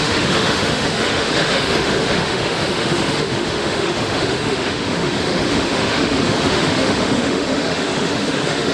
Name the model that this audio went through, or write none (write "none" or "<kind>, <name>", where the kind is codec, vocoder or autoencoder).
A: autoencoder, DAC-VAE